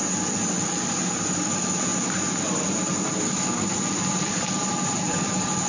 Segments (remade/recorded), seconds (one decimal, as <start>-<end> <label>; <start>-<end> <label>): 0.0-5.7 recorded